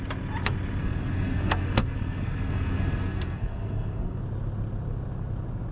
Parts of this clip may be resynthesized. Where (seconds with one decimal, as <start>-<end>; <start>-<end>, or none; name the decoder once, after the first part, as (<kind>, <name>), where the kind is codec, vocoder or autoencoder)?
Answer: 0.8-4.2 (codec, SNAC)